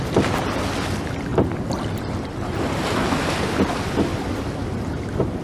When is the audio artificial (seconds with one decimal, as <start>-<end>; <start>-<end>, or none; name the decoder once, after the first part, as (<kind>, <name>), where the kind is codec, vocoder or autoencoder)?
4.1-5.4 (vocoder, BigVGAN v2)